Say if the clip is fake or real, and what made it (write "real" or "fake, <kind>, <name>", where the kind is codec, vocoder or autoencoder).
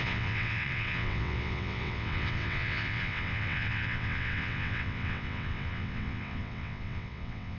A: fake, vocoder, WaveNeXt